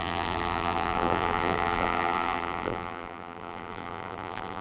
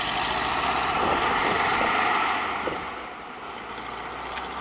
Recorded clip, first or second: second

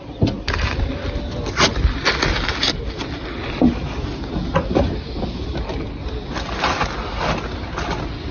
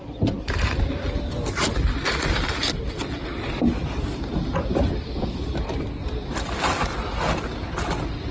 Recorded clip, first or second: first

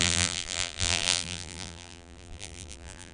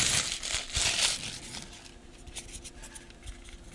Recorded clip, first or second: second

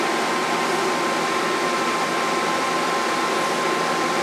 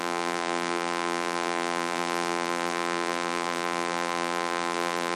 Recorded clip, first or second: first